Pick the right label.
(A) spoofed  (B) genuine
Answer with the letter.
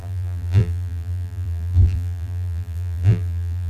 A